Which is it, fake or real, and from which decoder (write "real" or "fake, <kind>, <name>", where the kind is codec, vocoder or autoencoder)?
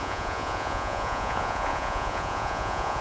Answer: fake, vocoder, Vocos